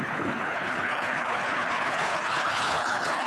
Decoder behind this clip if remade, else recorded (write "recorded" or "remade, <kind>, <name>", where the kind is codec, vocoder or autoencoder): remade, codec, HILCodec